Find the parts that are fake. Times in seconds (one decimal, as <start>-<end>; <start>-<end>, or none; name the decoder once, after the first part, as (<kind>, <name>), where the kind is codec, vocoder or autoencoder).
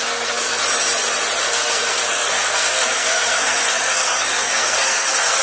0.0-0.6 (codec, SNAC); 1.4-5.4